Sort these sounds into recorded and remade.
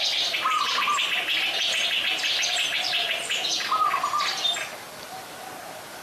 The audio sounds recorded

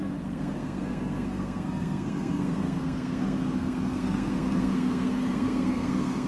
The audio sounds remade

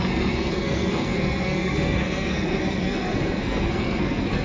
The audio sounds remade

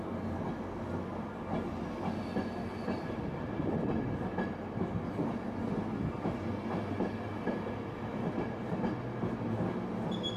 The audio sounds recorded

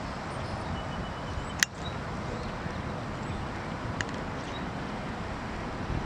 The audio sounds recorded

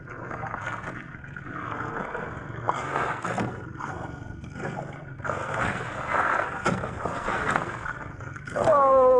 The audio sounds remade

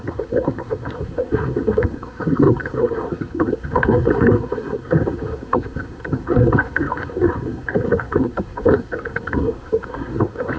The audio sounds remade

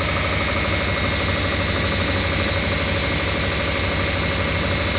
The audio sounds recorded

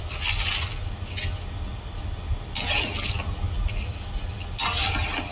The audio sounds recorded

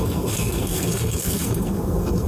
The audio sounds remade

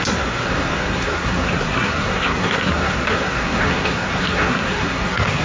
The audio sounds remade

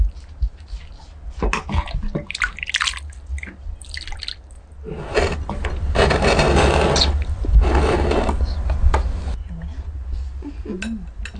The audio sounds recorded